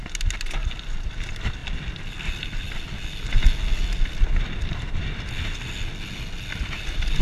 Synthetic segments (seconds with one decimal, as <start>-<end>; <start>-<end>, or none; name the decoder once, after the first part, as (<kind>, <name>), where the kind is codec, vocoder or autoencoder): none